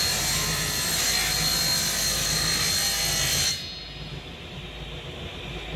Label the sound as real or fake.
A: real